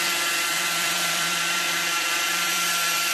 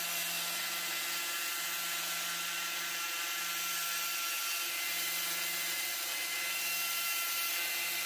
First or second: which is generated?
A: first